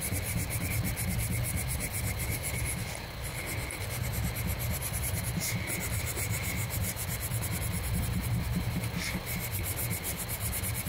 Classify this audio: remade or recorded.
recorded